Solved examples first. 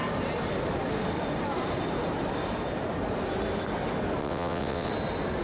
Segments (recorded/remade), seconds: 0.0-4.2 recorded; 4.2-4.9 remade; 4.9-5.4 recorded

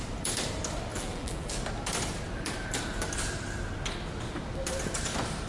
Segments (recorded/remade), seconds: 0.0-0.9 recorded; 0.9-1.6 remade; 1.6-5.5 recorded

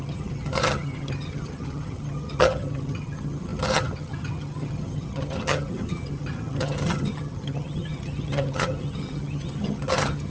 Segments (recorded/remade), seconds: 0.0-10.3 remade

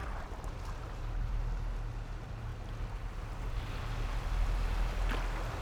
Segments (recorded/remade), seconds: 0.0-1.4 remade; 1.4-5.6 recorded

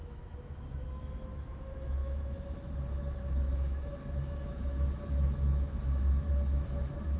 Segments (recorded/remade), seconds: 0.0-7.2 remade

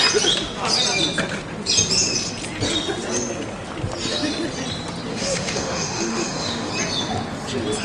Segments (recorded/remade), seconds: 0.0-5.1 recorded; 5.1-6.7 remade; 6.7-7.8 recorded

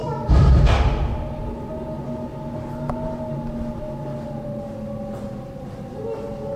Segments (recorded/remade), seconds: 0.0-0.7 remade; 0.7-6.6 recorded

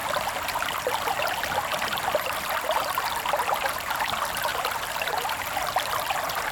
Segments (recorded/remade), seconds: 0.0-4.5 recorded; 4.5-5.1 remade; 5.1-6.5 recorded